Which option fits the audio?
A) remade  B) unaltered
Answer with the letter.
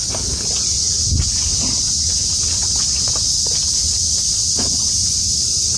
B